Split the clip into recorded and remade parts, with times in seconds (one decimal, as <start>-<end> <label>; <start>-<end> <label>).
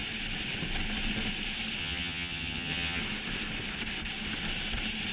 0.0-1.8 recorded; 1.8-3.0 remade; 3.0-5.1 recorded